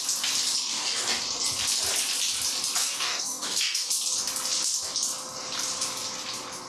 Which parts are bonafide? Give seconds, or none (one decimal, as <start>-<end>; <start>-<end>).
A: 0.0-0.7; 1.2-2.8; 3.9-6.7